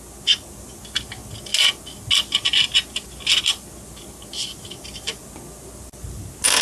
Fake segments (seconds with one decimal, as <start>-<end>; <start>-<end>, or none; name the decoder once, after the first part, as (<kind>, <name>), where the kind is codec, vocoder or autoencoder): none